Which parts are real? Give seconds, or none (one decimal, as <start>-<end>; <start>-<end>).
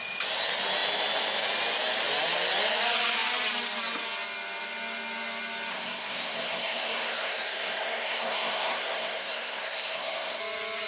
0.0-5.7; 10.4-10.9